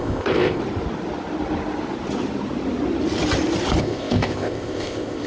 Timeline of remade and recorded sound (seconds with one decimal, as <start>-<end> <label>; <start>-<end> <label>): 0.0-0.6 remade; 0.6-3.8 recorded; 3.8-5.3 remade